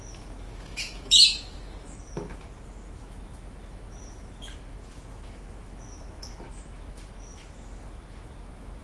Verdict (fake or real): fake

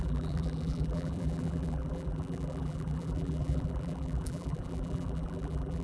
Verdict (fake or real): fake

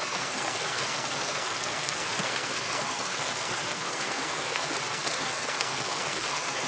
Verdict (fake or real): fake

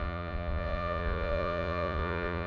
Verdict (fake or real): fake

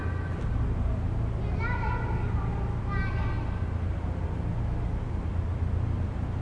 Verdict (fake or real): real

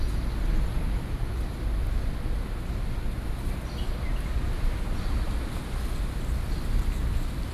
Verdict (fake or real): real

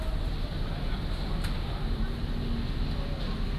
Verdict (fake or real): real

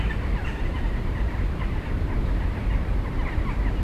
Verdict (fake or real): fake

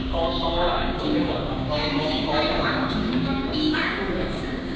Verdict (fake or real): fake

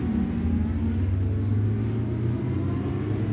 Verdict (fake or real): real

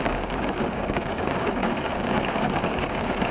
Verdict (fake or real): fake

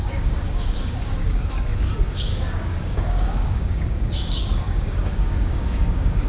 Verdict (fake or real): fake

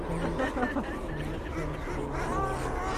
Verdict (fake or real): real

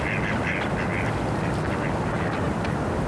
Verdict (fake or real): real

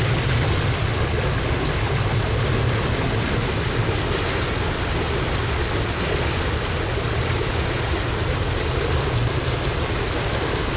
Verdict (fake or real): real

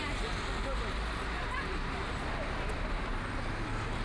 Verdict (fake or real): real